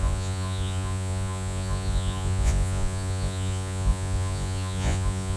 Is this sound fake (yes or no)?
yes